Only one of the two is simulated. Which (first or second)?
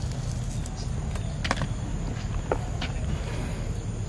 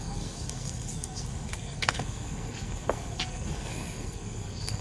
second